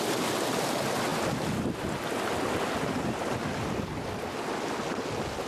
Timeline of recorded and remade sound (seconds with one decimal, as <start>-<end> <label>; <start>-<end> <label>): 0.0-5.5 recorded